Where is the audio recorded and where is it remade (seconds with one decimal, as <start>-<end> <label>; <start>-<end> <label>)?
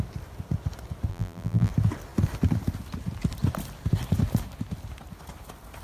0.0-1.1 recorded; 1.1-1.7 remade; 1.7-5.8 recorded